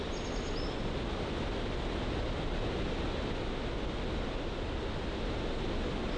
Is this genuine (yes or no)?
yes